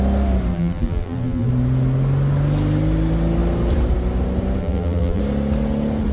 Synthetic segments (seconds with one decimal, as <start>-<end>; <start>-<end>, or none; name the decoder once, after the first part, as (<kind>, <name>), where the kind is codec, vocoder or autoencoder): 0.5-1.5 (vocoder, BigVGAN v2); 4.6-5.2